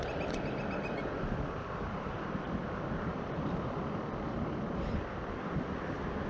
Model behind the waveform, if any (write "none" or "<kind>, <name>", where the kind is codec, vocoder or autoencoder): none